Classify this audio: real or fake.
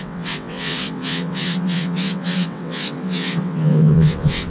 fake